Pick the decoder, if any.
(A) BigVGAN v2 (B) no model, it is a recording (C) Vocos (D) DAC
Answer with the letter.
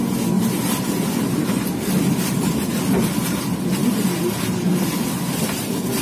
B